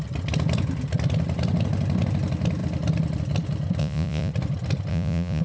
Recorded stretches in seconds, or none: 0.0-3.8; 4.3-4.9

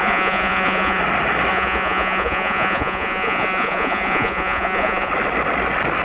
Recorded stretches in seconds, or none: 1.0-1.5; 5.1-6.0

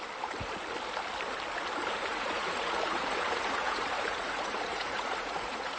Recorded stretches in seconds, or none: 0.0-2.1

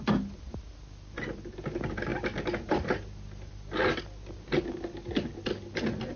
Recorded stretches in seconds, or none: 0.0-6.2

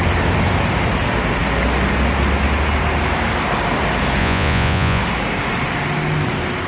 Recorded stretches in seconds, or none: 0.0-4.2; 5.0-6.7

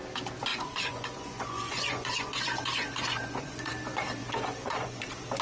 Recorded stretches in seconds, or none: 0.0-0.5; 3.7-4.2; 5.0-5.4